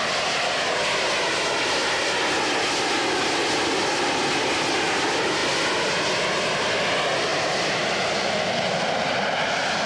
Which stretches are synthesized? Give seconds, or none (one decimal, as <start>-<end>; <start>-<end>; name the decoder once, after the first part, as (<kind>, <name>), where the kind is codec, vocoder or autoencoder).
none